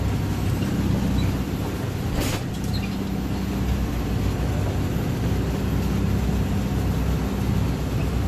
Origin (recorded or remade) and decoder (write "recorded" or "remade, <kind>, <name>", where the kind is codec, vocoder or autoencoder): recorded